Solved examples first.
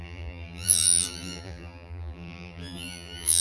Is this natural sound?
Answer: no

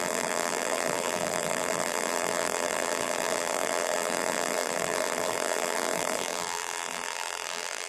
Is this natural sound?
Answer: no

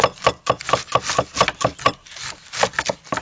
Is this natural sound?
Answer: yes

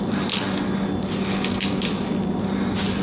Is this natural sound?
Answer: yes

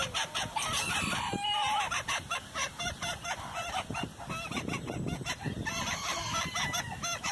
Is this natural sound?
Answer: yes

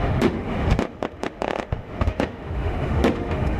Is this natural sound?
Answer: no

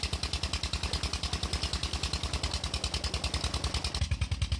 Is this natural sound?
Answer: yes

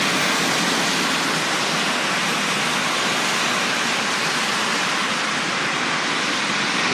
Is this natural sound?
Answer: yes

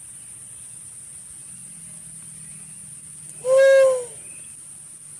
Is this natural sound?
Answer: yes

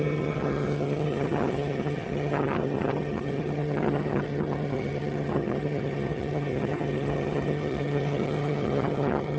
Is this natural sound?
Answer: no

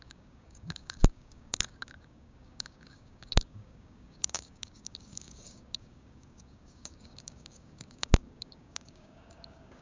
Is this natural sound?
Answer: no